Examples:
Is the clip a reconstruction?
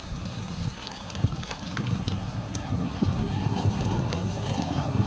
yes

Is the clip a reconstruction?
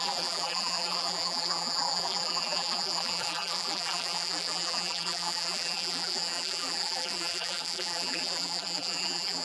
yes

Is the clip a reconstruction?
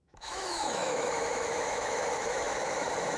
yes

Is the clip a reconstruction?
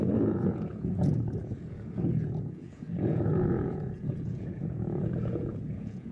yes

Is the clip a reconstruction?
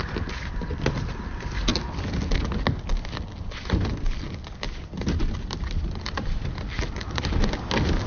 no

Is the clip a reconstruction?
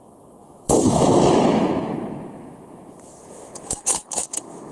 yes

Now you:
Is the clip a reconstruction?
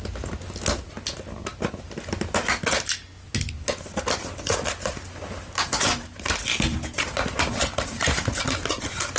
no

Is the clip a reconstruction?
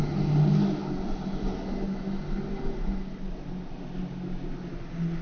no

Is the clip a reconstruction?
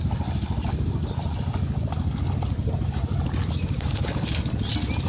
no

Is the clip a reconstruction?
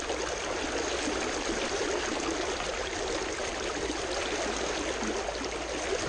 no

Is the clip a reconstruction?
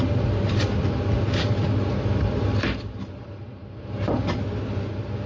yes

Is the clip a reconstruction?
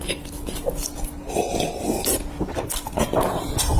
no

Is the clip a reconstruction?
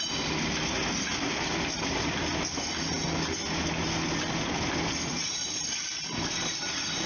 no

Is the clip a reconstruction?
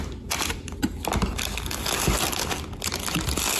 no